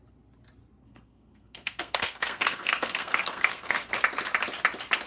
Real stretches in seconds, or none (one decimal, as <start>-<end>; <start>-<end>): 0.0-0.8; 3.9-5.1

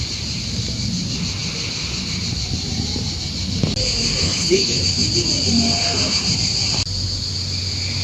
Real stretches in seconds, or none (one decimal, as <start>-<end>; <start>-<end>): 0.0-4.2; 4.8-8.0

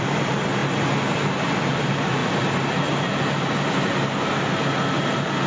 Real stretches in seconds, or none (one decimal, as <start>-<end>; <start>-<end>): 0.6-1.4; 2.2-5.5

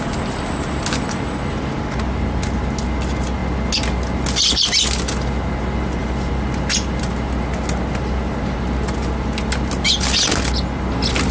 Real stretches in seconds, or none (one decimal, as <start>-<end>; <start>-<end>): 0.0-11.3

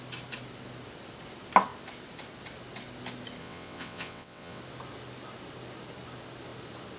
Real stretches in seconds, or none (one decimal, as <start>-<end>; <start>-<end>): 0.0-3.4; 4.6-7.0